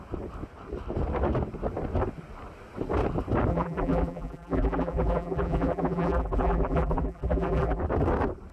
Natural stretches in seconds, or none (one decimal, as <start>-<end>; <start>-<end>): 0.0-3.5; 7.8-8.5